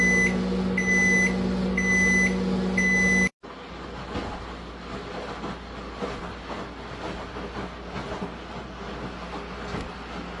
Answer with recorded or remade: recorded